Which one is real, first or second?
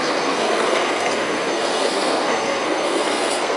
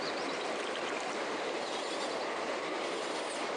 second